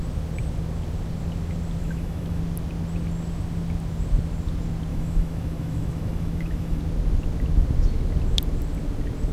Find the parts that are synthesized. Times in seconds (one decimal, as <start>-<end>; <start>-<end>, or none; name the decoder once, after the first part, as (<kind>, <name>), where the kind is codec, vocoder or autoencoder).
1.8-2.4 (autoencoder, DAC-VAE); 4.9-6.8